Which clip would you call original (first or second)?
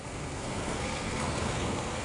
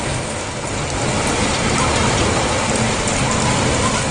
second